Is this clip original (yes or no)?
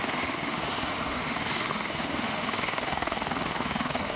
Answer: no